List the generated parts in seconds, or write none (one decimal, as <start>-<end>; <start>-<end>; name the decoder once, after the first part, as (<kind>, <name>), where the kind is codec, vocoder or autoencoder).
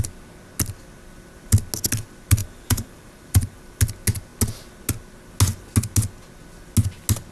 2.4-3.8 (vocoder, BigVGAN v2)